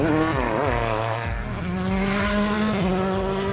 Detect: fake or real real